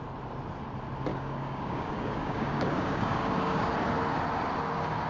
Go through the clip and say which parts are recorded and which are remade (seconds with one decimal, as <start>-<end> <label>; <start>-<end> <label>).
0.0-1.1 recorded; 1.1-3.7 remade; 3.7-5.1 recorded